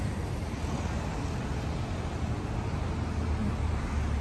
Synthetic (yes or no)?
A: no